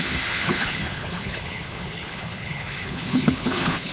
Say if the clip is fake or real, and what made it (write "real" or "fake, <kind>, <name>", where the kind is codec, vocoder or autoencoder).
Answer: fake, codec, HILCodec